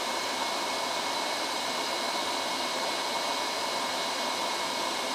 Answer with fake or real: fake